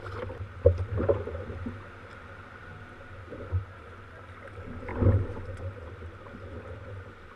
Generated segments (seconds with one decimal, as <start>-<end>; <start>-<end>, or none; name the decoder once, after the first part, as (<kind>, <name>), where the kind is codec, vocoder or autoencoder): none